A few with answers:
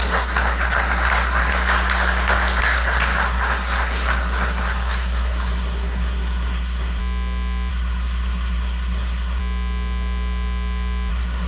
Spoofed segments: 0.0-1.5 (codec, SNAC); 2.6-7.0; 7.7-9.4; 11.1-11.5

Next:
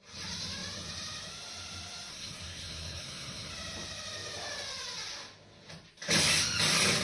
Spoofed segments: 2.1-3.5 (codec, SNAC)

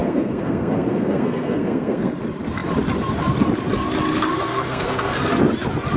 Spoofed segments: 0.0-2.1 (codec, SNAC); 4.1-5.2

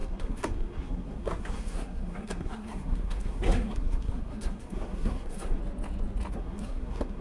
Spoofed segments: 0.0-5.6 (codec, SNAC); 6.3-7.2

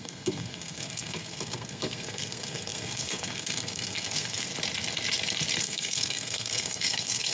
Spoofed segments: 0.0-4.5 (codec, SNAC); 5.6-7.3

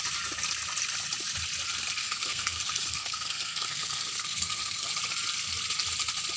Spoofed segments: 2.0-4.9 (codec, SNAC)

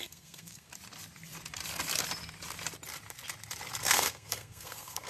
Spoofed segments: 0.0-0.7 (codec, SNAC); 3.8-5.1

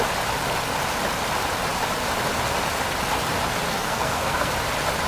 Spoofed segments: 3.7-4.5 (codec, SNAC)